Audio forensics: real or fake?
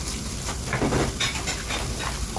real